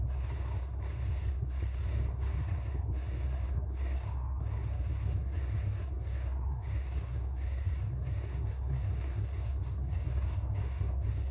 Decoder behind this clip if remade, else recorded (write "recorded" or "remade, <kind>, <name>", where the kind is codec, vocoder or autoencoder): remade, codec, SNAC